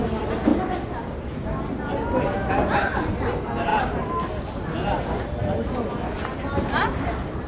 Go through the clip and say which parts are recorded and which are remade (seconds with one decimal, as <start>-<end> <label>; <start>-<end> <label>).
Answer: 0.0-7.5 recorded